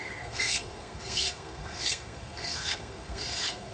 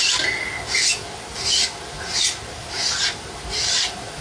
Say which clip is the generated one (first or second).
first